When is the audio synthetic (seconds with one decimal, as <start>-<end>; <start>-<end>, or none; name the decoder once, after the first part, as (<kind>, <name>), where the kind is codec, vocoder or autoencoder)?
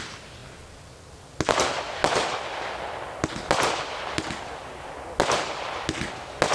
none